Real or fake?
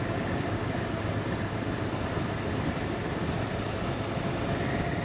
real